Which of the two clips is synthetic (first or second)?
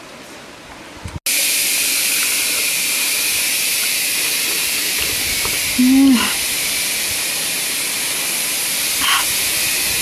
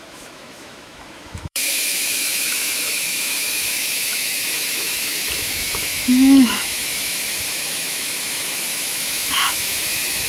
second